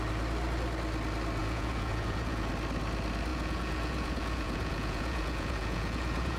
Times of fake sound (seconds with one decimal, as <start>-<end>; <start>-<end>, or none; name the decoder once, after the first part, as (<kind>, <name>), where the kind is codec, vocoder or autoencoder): 1.4-2.5 (vocoder, Vocos); 3.3-6.4